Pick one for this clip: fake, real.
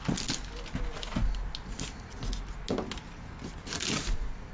real